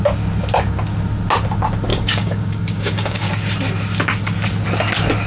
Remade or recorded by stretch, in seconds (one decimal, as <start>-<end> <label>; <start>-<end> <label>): 0.0-1.9 recorded; 1.9-3.3 remade; 3.3-5.3 recorded